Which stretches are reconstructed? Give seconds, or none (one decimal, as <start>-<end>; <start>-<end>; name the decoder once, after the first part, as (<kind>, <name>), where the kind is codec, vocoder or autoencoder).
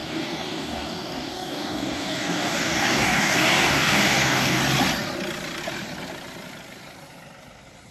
0.0-4.6 (codec, DAC)